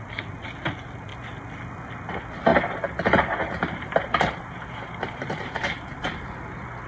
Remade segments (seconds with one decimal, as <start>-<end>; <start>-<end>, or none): 2.5-6.5